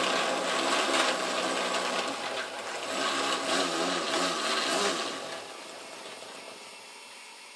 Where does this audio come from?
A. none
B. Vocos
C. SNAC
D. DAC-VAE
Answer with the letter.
A